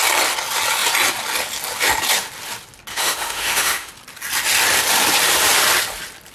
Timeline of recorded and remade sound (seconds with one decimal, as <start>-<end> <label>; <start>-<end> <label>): 0.0-2.9 recorded; 2.9-3.9 remade; 3.9-6.3 recorded